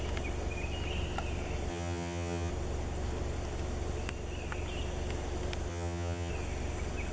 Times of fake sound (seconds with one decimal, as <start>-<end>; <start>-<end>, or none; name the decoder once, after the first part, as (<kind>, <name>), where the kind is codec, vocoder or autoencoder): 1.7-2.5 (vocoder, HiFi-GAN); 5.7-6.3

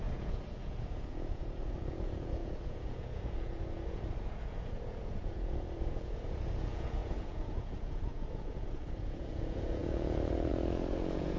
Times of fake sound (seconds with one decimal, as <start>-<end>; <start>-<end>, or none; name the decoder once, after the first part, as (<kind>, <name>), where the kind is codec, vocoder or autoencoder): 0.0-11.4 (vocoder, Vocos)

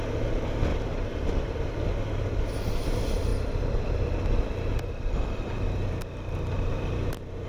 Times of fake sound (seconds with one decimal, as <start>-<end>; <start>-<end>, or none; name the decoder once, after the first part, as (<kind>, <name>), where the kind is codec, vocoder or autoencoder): 0.7-1.9 (vocoder, BigVGAN v2); 3.3-3.9

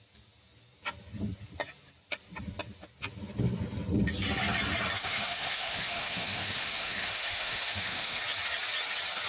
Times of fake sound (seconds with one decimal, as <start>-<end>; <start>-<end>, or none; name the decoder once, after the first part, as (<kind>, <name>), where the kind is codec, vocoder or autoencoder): 5.0-8.2 (autoencoder, DAC-VAE)